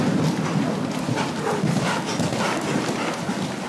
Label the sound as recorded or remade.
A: recorded